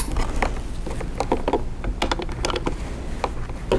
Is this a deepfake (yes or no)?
no